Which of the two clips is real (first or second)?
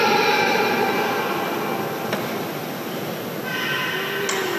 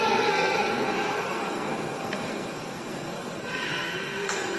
first